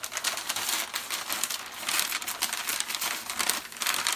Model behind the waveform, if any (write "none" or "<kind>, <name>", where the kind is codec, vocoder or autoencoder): none